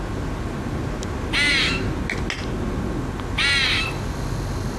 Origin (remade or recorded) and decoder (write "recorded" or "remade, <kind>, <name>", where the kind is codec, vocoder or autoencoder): recorded